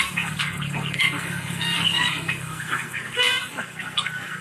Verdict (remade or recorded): remade